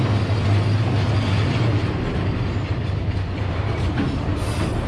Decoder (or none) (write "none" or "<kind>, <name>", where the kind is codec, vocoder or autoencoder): none